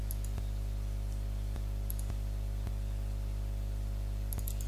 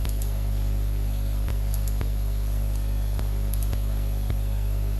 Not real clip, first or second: second